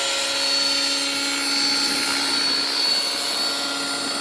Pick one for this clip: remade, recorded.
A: recorded